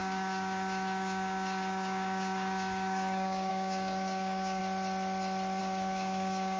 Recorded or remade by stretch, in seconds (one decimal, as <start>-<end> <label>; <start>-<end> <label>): 0.0-4.6 remade; 4.6-5.6 recorded; 5.6-6.6 remade